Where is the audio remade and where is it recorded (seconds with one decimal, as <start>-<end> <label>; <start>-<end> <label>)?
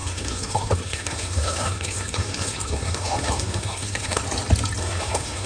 0.0-4.2 remade; 4.2-4.8 recorded; 4.8-5.5 remade